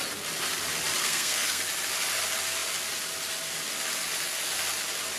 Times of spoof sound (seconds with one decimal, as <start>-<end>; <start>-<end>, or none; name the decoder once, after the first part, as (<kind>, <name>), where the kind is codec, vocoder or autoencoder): 1.0-1.6 (codec, SNAC)

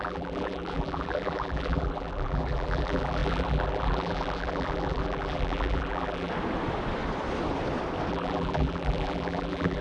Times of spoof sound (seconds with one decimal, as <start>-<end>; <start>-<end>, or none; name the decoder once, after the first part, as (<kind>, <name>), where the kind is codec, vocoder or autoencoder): 0.0-6.3 (vocoder, BigVGAN v2); 8.1-9.8

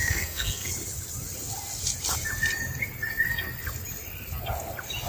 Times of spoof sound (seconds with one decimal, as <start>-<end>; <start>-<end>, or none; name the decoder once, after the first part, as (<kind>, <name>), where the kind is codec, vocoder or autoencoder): 0.0-0.7 (codec, SNAC)